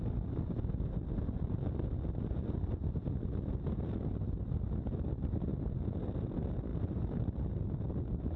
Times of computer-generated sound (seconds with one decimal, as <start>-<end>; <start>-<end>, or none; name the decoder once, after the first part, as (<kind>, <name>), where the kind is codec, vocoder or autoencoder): none